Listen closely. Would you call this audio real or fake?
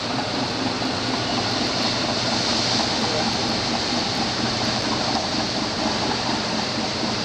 fake